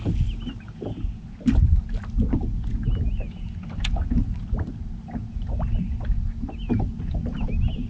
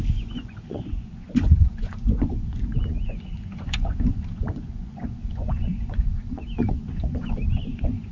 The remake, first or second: second